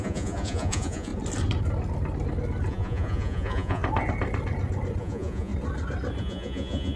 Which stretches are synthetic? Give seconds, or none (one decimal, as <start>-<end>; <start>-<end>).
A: 0.0-1.1; 2.7-3.8; 5.0-5.5; 6.2-7.0